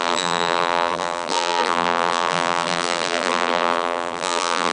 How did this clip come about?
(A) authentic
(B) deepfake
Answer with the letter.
B